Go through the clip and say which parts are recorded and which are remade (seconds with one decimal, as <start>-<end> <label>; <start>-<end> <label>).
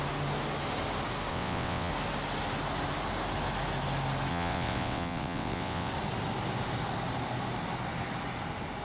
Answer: 0.0-1.3 recorded; 1.3-1.9 remade; 1.9-4.3 recorded; 4.3-5.9 remade; 5.9-8.8 recorded